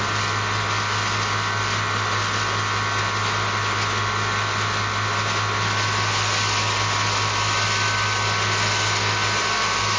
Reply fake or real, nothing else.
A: real